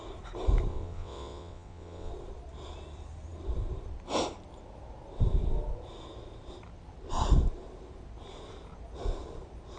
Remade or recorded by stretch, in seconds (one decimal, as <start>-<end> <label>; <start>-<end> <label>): 0.0-0.7 recorded; 0.7-2.1 remade; 2.1-9.8 recorded